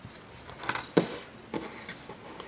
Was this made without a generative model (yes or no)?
yes